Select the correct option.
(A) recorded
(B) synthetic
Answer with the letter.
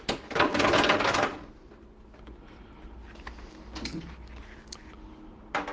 A